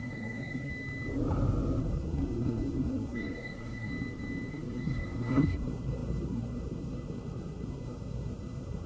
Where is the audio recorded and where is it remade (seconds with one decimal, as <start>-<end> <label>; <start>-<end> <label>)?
0.0-0.7 remade; 0.7-1.8 recorded; 1.8-3.9 remade; 3.9-4.5 recorded; 4.5-8.9 remade